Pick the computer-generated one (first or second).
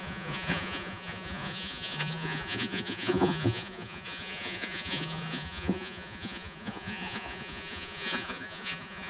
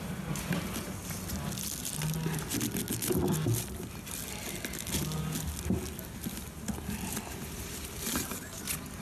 first